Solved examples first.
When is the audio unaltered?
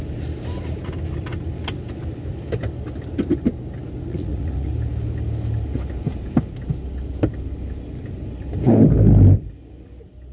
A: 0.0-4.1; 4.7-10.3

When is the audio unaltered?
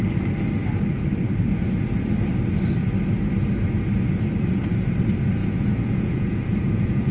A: 0.0-5.4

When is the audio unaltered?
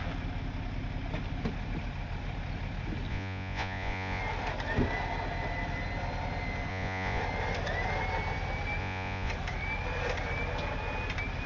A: 0.0-3.1; 4.2-6.7; 7.2-8.8; 9.3-11.5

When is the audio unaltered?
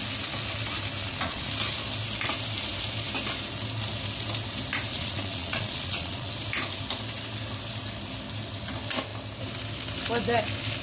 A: 0.0-1.0; 1.5-4.9; 6.3-10.8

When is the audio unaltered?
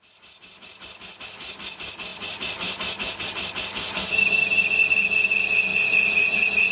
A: 0.0-5.7